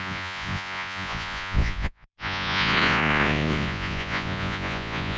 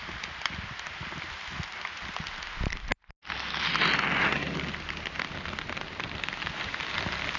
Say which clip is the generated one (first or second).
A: first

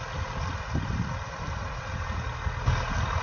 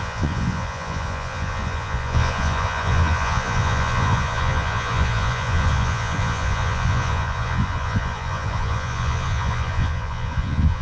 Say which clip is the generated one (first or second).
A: second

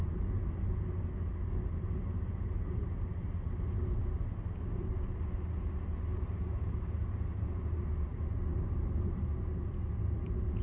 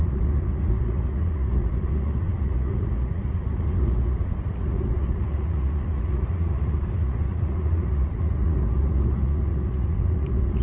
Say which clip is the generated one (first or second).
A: second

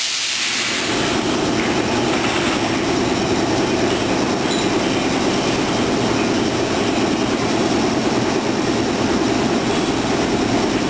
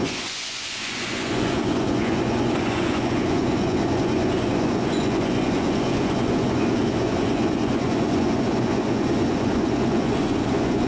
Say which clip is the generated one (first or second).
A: second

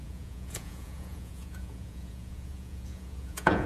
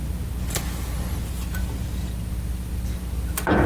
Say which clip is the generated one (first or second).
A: first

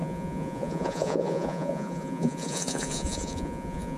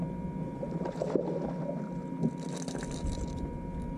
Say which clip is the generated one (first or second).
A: first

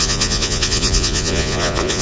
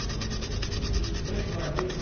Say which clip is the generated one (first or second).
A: first